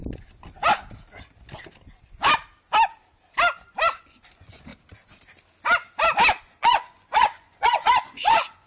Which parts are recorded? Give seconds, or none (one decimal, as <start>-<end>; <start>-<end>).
0.0-4.0; 4.7-6.4